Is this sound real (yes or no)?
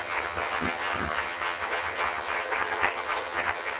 no